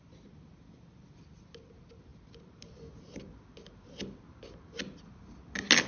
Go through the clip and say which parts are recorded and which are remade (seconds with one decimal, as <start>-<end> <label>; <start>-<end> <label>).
0.0-5.9 recorded